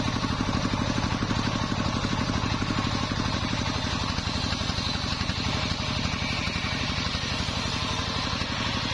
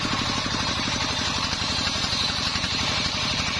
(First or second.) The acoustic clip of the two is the first